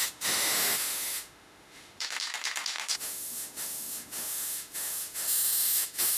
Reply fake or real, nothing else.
fake